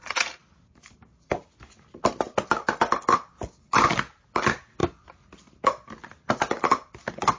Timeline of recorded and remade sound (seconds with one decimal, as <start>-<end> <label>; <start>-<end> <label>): 0.0-0.4 recorded; 0.4-2.8 remade; 2.8-7.4 recorded